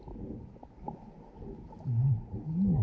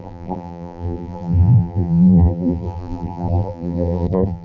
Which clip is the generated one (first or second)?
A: second